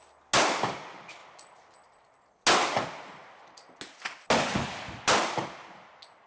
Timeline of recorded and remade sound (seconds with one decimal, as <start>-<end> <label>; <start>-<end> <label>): 0.0-6.3 recorded